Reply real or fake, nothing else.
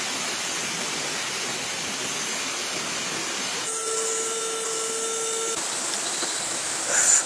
real